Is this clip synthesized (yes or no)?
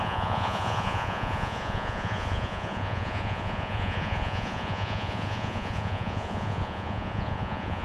yes